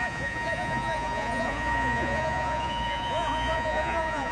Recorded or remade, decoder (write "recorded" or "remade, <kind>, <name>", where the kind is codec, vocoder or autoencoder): remade, vocoder, Vocos